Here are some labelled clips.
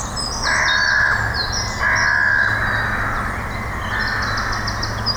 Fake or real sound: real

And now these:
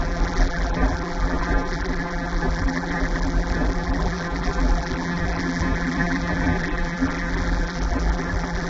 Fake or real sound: fake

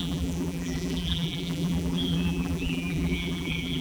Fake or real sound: fake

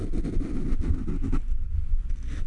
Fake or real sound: real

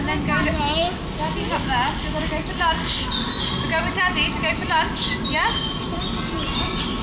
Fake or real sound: real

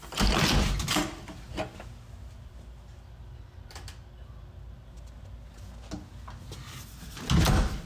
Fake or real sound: real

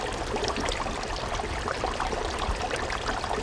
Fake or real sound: real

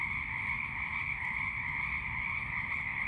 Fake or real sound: real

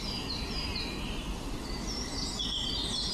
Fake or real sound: fake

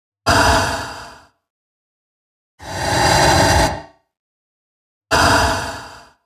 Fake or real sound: real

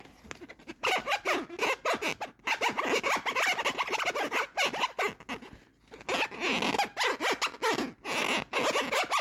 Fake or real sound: real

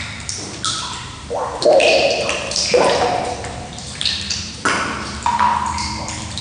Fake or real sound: fake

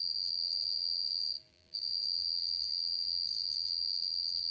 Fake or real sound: fake